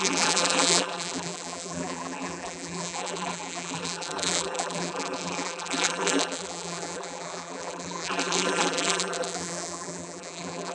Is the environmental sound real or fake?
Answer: fake